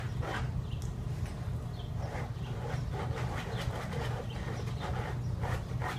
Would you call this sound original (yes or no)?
yes